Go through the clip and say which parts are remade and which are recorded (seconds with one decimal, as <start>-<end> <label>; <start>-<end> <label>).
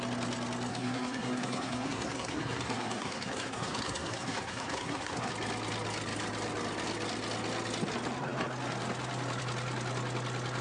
0.0-0.7 recorded; 0.7-5.3 remade; 5.3-10.6 recorded